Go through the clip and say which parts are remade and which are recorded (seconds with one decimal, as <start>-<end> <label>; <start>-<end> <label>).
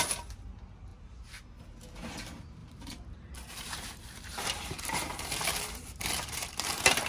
0.0-2.6 recorded; 2.6-7.1 remade